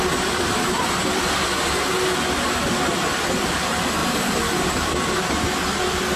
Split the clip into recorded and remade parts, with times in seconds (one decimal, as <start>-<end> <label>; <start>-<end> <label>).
0.0-6.2 recorded